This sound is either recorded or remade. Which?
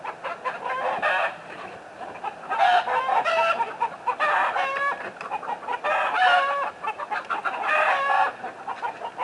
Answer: recorded